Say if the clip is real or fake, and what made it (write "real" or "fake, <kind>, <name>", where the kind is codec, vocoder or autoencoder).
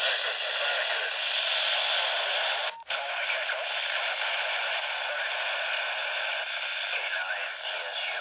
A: real